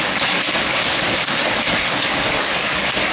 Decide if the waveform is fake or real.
fake